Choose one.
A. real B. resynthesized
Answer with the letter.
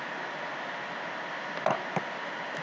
A